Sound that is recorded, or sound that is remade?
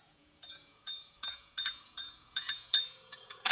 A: remade